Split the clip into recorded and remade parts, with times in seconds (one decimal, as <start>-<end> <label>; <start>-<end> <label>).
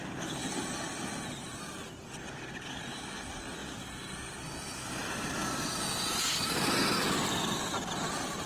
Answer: 0.0-0.4 recorded; 0.4-2.1 remade; 2.1-3.6 recorded; 3.6-8.5 remade